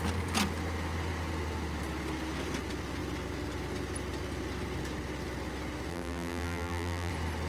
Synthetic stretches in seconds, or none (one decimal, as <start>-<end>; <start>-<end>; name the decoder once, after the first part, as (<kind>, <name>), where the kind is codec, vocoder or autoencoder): 5.9-7.1 (vocoder, BigVGAN v2)